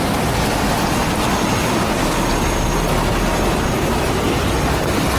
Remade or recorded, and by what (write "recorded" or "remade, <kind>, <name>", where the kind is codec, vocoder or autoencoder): recorded